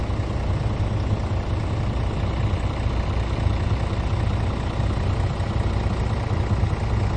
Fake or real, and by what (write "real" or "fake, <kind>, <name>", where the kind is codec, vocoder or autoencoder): real